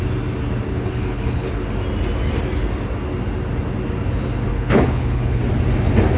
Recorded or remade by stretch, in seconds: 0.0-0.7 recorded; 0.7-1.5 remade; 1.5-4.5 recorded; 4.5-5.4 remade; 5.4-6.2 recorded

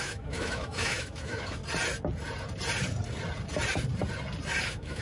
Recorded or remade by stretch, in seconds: 0.0-1.6 remade; 1.6-4.6 recorded; 4.6-5.0 remade

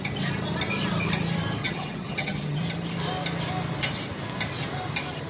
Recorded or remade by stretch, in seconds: 0.0-1.6 recorded; 1.6-2.6 remade; 2.6-5.3 recorded

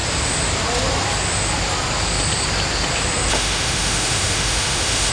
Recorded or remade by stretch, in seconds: 0.0-3.3 recorded; 3.3-5.1 remade

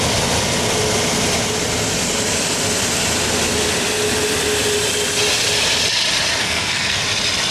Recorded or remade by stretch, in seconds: 0.0-6.4 recorded; 6.4-7.0 remade; 7.0-7.5 recorded